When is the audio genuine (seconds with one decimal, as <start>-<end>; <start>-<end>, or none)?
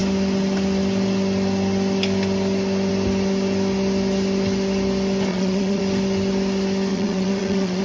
0.0-5.3; 5.8-6.9